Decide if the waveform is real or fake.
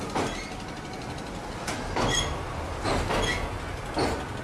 real